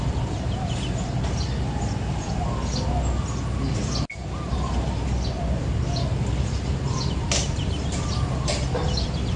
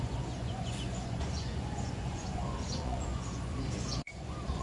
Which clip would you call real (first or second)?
first